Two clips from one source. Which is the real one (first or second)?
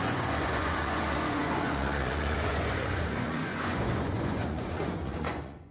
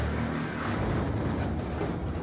second